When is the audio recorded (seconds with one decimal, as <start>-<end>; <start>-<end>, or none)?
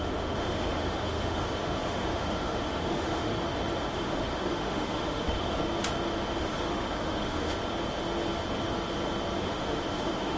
3.3-3.9; 5.6-6.4; 7.6-9.4